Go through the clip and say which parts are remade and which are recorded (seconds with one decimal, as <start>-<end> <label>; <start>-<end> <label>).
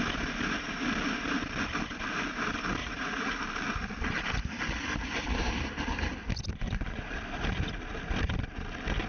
0.0-2.8 recorded; 2.8-3.3 remade; 3.3-9.1 recorded